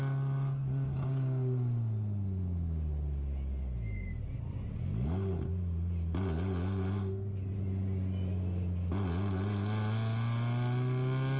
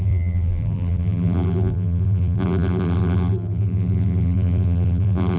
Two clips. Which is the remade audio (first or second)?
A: second